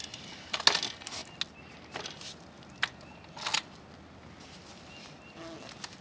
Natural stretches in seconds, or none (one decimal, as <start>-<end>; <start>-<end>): 0.0-6.0